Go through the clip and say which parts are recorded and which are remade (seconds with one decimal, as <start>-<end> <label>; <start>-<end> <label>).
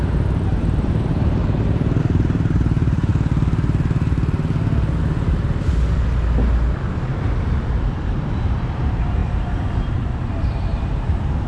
0.0-1.4 remade; 1.4-2.0 recorded; 2.0-3.1 remade; 3.1-7.1 recorded; 7.1-11.5 remade